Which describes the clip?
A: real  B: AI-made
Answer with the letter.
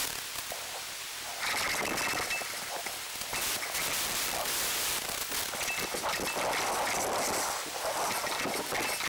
A